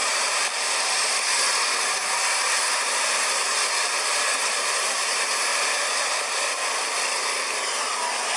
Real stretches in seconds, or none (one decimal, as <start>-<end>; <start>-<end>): 0.6-8.4